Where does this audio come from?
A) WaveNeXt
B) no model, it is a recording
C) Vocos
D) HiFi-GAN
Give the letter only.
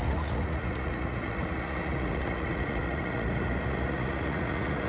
C